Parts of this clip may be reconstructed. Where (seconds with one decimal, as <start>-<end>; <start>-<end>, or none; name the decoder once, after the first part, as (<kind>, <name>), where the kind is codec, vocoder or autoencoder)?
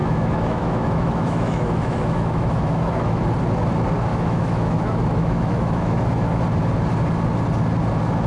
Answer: 0.0-3.2 (autoencoder, DAC-VAE); 4.1-6.4